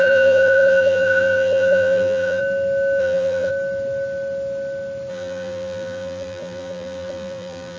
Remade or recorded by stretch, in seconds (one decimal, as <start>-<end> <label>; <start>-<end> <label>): 0.0-2.4 remade; 2.4-3.0 recorded; 3.0-3.5 remade; 3.5-5.1 recorded; 5.1-7.8 remade